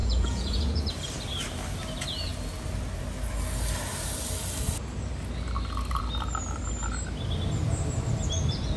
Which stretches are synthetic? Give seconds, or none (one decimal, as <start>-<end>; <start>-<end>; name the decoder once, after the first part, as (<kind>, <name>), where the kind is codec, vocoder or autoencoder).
0.0-0.8 (vocoder, Vocos)